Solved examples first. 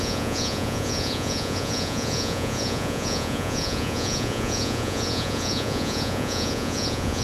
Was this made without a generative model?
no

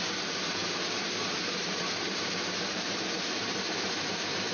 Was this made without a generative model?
no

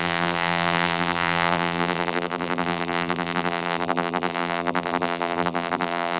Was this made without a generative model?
no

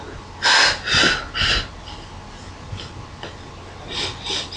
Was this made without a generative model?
yes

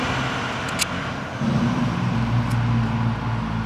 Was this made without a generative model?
yes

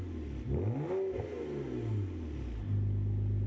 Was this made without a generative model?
yes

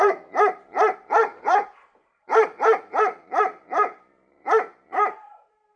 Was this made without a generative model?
no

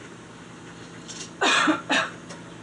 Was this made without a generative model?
yes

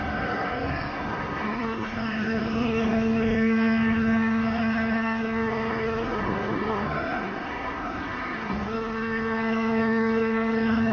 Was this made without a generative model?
no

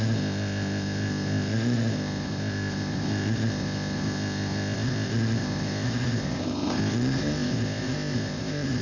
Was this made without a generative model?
no